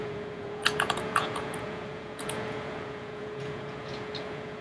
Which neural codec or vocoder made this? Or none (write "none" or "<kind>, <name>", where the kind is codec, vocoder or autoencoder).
vocoder, Vocos